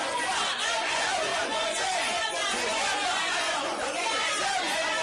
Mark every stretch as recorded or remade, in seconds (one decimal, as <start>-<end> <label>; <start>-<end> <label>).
0.0-5.0 remade